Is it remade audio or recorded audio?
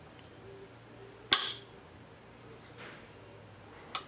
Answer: recorded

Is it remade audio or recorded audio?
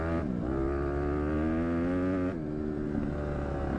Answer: recorded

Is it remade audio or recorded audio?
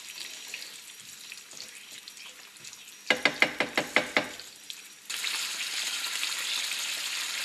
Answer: remade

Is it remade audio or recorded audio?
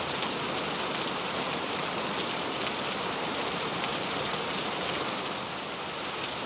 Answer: remade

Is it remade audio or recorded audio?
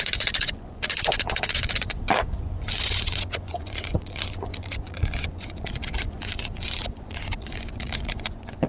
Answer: remade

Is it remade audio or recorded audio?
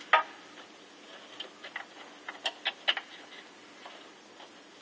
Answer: recorded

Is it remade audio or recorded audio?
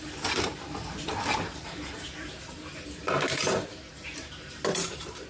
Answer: remade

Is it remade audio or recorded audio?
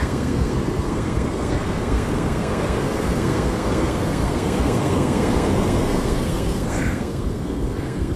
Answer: remade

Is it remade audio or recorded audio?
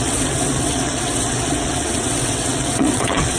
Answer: remade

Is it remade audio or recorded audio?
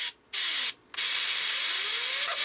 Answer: recorded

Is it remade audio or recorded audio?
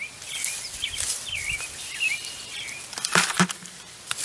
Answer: recorded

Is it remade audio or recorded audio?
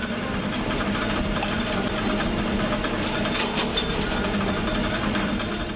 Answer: remade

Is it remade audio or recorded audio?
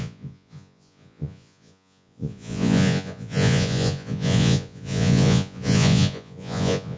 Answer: remade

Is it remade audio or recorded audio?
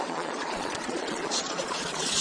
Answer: remade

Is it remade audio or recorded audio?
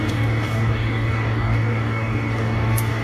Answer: remade